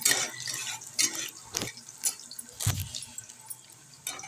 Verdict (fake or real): real